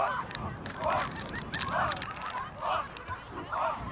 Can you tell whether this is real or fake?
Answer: real